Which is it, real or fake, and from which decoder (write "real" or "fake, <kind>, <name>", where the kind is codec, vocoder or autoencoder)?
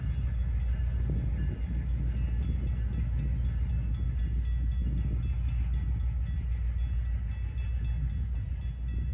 real